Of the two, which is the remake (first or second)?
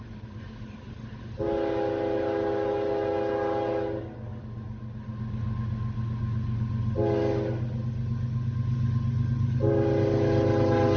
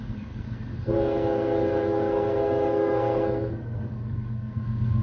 second